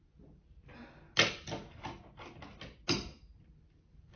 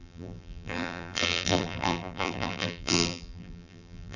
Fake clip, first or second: second